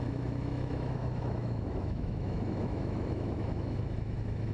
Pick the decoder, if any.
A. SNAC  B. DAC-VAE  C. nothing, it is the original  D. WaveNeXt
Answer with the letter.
B